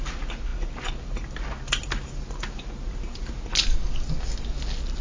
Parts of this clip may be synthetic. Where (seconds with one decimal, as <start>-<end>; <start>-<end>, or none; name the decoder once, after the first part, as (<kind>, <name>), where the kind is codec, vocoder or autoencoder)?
none